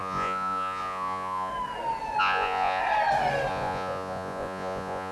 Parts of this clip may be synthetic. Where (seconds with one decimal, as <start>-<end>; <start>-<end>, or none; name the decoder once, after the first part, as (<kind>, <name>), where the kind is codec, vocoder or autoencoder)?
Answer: 0.0-1.5 (vocoder, Vocos); 2.2-2.8; 3.5-5.1

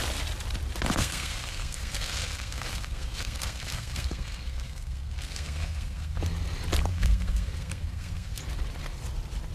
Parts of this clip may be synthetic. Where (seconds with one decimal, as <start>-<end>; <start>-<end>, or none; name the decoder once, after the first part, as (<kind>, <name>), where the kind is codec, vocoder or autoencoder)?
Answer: 1.0-6.2 (codec, SNAC); 6.9-8.4